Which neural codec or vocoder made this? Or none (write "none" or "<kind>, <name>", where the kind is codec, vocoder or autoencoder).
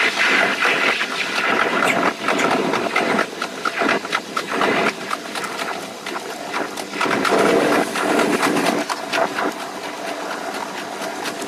none